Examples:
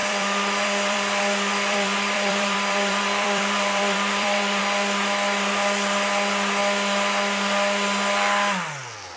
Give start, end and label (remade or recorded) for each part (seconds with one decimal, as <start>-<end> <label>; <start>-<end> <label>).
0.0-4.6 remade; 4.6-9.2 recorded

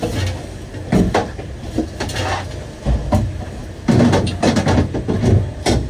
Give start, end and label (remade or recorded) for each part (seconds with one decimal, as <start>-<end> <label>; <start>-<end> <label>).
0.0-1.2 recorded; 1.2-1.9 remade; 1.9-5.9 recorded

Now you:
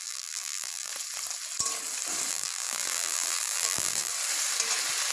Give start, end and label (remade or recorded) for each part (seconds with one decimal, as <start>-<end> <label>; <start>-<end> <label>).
0.0-0.9 remade; 0.9-2.3 recorded; 2.3-4.1 remade; 4.1-5.1 recorded

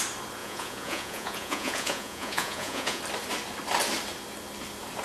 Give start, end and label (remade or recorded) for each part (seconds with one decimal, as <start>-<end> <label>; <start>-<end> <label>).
0.0-0.4 recorded; 0.4-3.0 remade; 3.0-5.0 recorded